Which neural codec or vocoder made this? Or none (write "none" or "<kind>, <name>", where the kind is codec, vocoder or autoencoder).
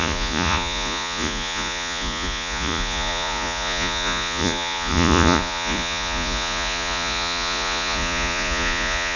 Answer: vocoder, Vocos